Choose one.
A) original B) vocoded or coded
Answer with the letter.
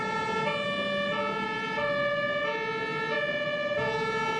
A